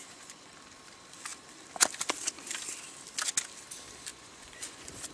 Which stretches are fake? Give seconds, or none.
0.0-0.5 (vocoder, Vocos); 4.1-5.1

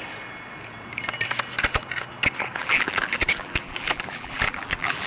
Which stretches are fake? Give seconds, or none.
2.6-5.1 (vocoder, BigVGAN v2)

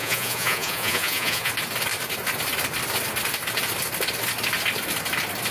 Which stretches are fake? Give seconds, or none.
0.0-1.5 (vocoder, Vocos)

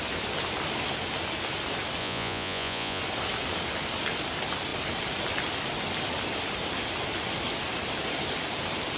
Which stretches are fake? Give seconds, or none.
2.0-3.0 (vocoder, Vocos)

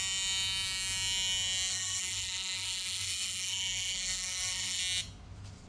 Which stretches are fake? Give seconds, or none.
1.7-4.8 (codec, SNAC)

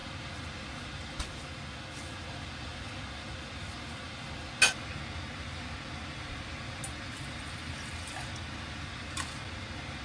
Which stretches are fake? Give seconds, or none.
none

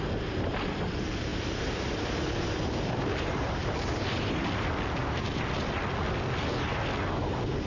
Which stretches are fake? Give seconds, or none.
none

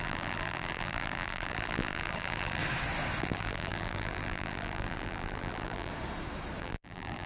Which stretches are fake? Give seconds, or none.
0.0-2.6 (vocoder, BigVGAN v2); 3.2-5.9; 6.6-7.3